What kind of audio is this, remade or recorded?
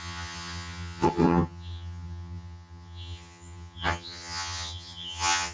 remade